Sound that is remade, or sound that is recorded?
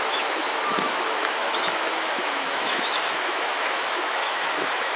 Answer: remade